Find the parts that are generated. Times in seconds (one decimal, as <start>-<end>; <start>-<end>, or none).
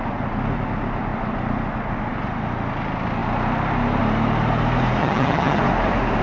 5.0-5.6